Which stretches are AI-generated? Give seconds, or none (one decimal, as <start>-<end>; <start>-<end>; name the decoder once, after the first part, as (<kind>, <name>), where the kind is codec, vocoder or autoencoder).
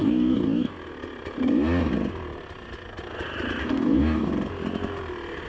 0.0-0.7 (codec, DAC); 3.6-4.3